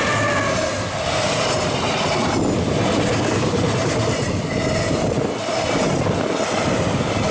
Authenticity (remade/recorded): recorded